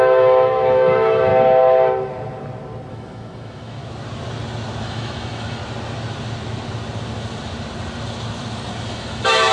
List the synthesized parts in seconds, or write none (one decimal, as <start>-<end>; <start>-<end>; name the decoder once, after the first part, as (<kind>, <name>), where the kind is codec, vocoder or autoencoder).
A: 0.0-1.3 (autoencoder, DAC-VAE); 2.9-3.8; 4.8-5.6; 8.9-9.5